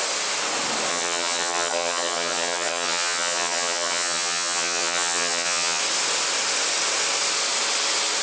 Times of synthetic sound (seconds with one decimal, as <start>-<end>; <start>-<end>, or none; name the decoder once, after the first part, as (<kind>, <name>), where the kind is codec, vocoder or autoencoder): 0.9-5.8 (vocoder, HiFi-GAN)